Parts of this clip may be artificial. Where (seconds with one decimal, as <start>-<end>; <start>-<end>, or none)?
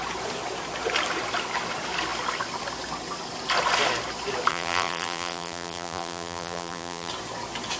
4.5-7.1